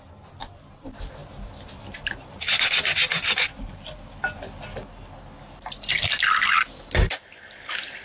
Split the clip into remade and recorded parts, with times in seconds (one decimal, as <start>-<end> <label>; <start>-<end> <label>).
0.0-0.4 recorded; 0.4-4.4 remade; 4.4-8.0 recorded